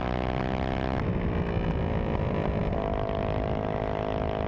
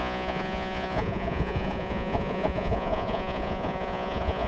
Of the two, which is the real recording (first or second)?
first